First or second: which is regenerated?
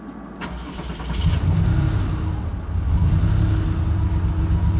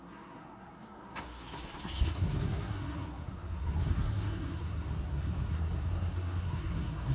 second